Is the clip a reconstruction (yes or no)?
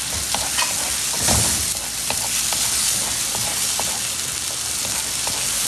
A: no